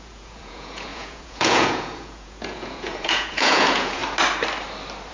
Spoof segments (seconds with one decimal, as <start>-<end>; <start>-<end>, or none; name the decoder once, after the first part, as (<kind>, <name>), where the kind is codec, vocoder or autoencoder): 0.0-4.0 (vocoder, Vocos)